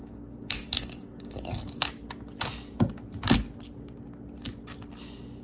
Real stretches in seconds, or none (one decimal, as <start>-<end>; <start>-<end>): 1.9-5.4

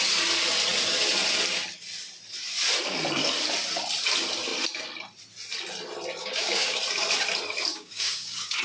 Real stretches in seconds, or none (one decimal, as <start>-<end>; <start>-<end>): 0.0-6.2; 6.8-7.7